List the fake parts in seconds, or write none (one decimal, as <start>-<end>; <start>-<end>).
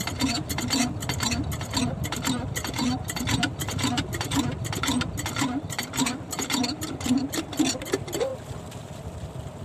none